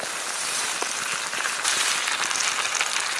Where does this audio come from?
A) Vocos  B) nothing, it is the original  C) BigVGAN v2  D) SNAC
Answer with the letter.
C